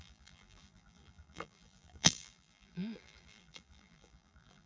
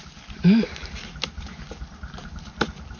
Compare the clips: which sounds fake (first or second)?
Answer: first